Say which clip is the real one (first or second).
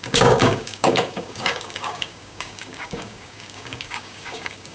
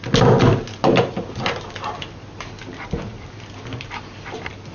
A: second